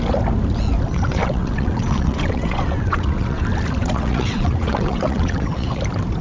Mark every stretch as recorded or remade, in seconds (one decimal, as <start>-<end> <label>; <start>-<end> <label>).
0.0-0.9 recorded; 0.9-3.4 remade; 3.4-3.8 recorded; 3.8-5.8 remade; 5.8-6.2 recorded

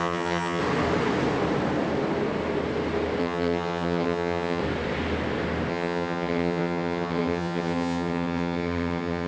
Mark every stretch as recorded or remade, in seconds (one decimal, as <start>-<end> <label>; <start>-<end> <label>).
0.0-0.6 remade; 0.6-3.2 recorded; 3.2-4.6 remade; 4.6-5.7 recorded; 5.7-9.3 remade